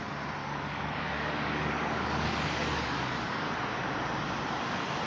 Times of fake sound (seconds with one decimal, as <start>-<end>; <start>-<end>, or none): 0.4-3.5